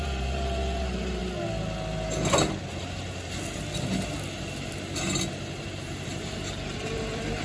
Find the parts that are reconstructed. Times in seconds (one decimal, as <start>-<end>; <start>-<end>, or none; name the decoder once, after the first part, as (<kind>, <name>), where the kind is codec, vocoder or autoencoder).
0.0-1.2 (vocoder, BigVGAN v2); 5.6-7.4